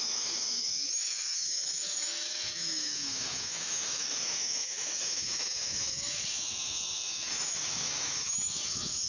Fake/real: fake